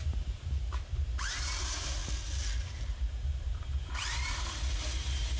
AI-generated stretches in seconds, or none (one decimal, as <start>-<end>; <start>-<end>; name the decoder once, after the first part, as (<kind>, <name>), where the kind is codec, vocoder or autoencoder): 0.0-2.0 (vocoder, BigVGAN v2); 2.6-5.4